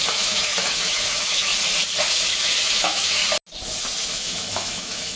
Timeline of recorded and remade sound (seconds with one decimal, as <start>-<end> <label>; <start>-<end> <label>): 0.0-1.5 remade; 1.5-2.0 recorded; 2.0-3.2 remade; 3.2-3.8 recorded; 3.8-5.2 remade